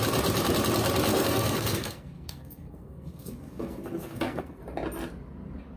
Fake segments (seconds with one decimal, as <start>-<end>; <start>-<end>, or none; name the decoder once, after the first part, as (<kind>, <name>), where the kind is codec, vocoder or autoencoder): 1.1-4.6 (codec, SNAC)